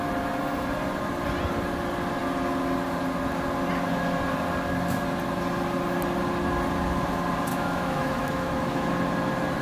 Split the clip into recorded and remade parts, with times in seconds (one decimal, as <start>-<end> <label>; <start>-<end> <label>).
0.0-7.5 recorded; 7.5-8.9 remade; 8.9-9.6 recorded